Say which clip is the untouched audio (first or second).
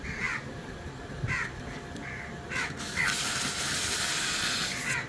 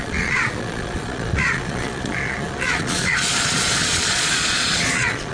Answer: first